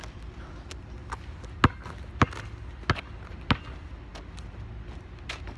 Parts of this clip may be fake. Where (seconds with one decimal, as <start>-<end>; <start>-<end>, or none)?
none